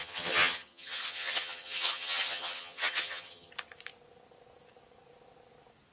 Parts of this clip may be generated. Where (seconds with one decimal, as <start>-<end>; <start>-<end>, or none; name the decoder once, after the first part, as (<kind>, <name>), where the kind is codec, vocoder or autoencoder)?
0.0-3.5 (vocoder, HiFi-GAN)